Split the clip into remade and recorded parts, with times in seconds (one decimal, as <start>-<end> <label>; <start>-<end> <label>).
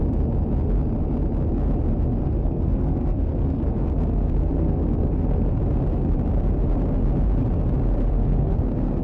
0.0-2.2 recorded; 2.2-5.5 remade; 5.5-8.0 recorded; 8.0-9.0 remade